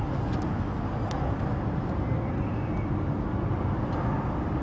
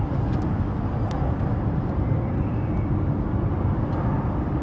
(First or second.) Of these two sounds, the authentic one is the first